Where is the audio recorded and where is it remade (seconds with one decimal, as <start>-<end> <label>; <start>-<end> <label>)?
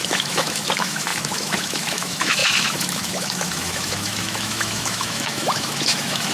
0.0-6.3 remade